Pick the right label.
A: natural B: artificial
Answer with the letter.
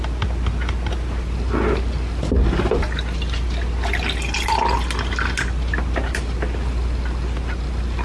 A